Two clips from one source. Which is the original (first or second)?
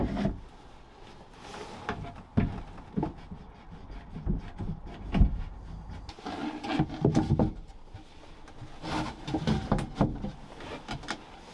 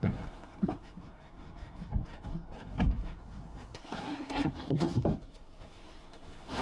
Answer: first